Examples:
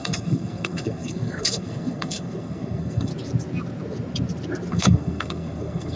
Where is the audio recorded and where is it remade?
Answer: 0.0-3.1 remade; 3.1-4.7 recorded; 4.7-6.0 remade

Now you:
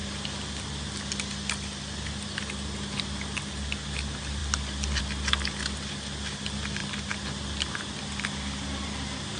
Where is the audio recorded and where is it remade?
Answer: 0.0-9.4 recorded

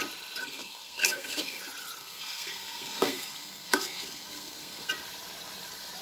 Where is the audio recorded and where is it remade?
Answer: 0.0-0.4 recorded; 0.4-1.6 remade; 1.6-2.0 recorded; 2.0-4.9 remade; 4.9-6.0 recorded

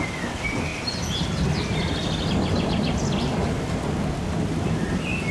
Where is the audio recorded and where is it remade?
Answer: 0.0-5.3 recorded

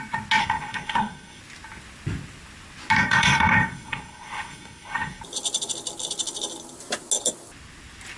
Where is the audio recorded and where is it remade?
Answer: 0.0-0.4 recorded; 0.4-1.4 remade; 1.4-3.0 recorded; 3.0-5.2 remade; 5.2-8.2 recorded

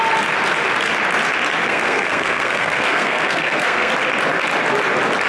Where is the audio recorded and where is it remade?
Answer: 0.0-1.6 recorded; 1.6-3.9 remade; 3.9-5.3 recorded